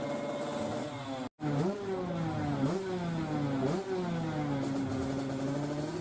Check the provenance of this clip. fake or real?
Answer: real